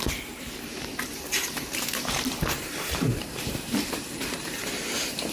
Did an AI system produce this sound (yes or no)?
yes